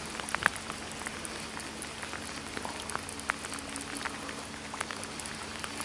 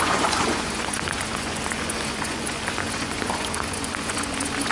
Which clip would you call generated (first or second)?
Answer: second